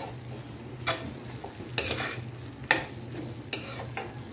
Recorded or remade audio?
recorded